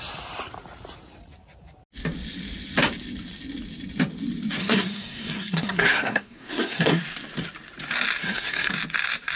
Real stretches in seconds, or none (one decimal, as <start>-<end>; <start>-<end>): 0.0-4.6; 7.0-8.2; 8.7-9.4